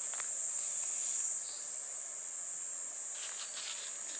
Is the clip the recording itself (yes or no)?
yes